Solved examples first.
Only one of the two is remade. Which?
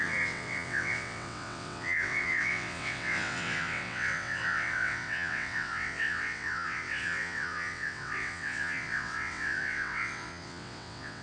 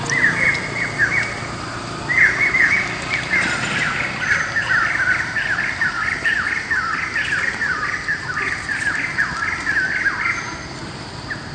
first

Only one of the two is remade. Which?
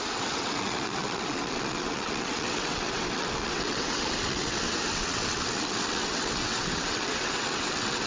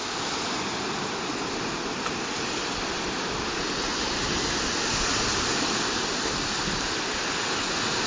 first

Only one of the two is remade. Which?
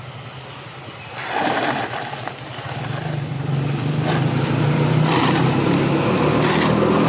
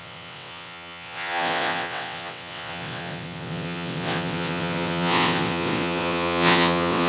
second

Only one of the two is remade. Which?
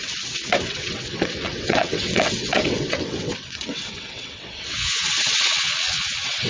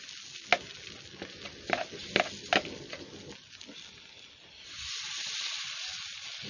first